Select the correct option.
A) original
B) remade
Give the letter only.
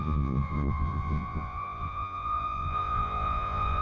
B